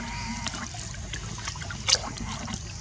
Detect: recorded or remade recorded